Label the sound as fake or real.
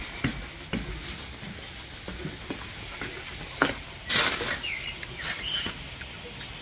real